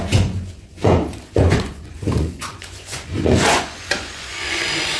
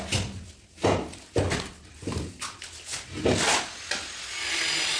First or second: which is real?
second